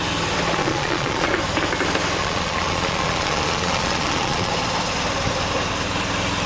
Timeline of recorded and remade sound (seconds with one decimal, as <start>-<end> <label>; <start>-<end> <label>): 0.0-0.6 recorded; 0.6-1.3 remade; 1.3-2.2 recorded; 2.2-4.5 remade; 4.5-6.5 recorded